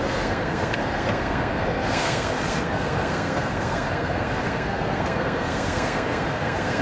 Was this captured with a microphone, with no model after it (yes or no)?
no